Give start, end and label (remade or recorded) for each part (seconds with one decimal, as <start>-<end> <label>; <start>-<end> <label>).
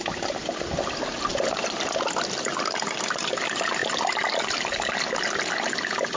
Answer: 0.0-6.2 recorded